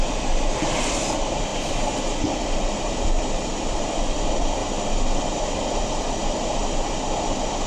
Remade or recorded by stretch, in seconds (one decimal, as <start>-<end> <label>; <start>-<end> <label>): 0.0-4.6 remade; 4.6-5.2 recorded; 5.2-7.7 remade